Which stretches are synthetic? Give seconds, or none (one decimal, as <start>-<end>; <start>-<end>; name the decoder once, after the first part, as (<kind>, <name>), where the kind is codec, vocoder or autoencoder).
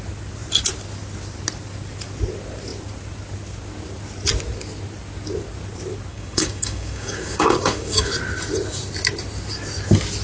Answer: 6.1-8.1 (codec, DAC)